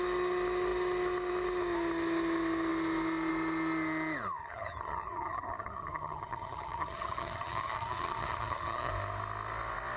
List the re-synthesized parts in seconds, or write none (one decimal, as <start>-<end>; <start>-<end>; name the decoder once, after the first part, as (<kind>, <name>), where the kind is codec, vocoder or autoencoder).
4.4-8.9 (vocoder, HiFi-GAN)